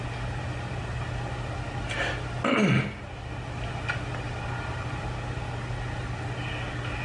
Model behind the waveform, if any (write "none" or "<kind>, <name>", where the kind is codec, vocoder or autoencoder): none